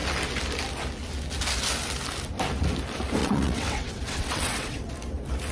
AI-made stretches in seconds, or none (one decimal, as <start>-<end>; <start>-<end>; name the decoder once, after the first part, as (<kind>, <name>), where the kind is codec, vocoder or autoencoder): 3.2-4.9 (vocoder, WaveNeXt)